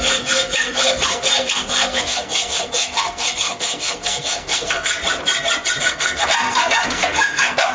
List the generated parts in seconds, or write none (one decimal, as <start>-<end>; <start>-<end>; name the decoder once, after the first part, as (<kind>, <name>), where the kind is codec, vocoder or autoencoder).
0.0-5.0 (codec, SNAC); 5.8-7.7